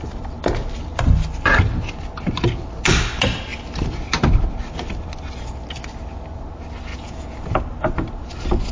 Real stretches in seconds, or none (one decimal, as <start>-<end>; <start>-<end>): 0.0-6.9; 7.6-8.7